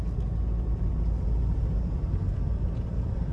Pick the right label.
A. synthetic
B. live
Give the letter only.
B